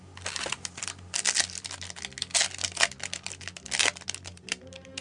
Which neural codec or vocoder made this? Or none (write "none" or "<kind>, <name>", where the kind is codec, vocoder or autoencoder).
none